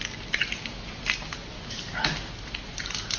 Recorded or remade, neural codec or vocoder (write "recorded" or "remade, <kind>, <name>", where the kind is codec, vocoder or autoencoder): recorded